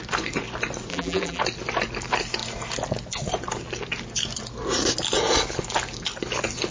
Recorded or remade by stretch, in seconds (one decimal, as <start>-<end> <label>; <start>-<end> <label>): 0.0-0.9 recorded; 0.9-1.4 remade; 1.4-6.7 recorded